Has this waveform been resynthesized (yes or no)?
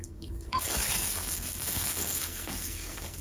yes